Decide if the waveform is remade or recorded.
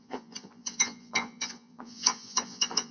remade